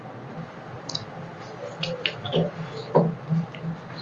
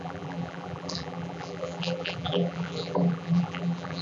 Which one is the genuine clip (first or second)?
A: first